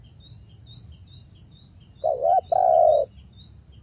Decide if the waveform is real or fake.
real